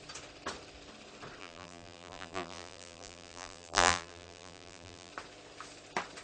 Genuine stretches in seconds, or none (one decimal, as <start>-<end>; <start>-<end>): 0.0-1.4; 5.1-6.2